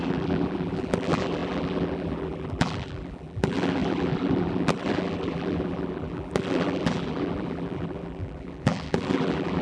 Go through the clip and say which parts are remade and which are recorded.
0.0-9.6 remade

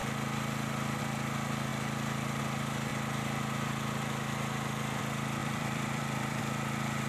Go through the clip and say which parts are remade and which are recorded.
0.0-5.4 recorded; 5.4-6.4 remade; 6.4-7.1 recorded

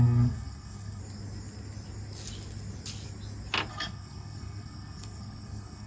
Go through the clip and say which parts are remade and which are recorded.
0.0-1.0 remade; 1.0-3.7 recorded; 3.7-5.9 remade

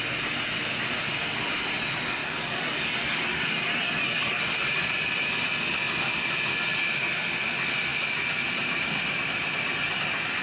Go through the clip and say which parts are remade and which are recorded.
0.0-2.2 recorded; 2.2-4.4 remade; 4.4-10.4 recorded

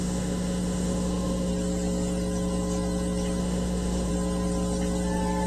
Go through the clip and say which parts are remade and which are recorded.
0.0-1.5 remade; 1.5-3.4 recorded; 3.4-4.1 remade; 4.1-5.5 recorded